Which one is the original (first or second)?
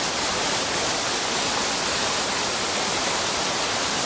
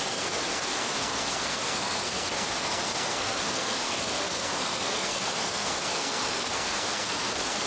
first